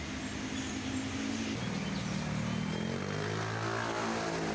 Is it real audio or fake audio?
real